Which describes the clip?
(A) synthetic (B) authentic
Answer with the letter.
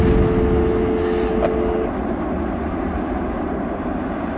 B